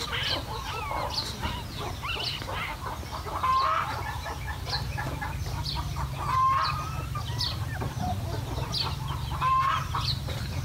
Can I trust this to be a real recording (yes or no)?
yes